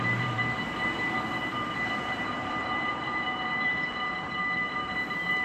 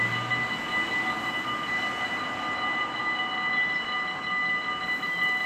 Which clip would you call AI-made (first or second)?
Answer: first